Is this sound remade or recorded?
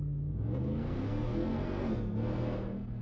remade